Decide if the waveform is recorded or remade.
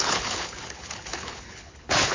remade